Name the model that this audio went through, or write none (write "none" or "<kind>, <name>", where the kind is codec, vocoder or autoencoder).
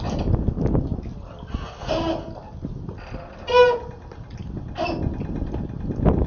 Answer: none